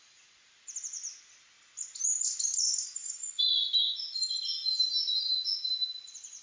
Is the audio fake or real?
real